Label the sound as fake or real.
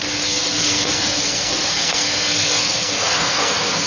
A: fake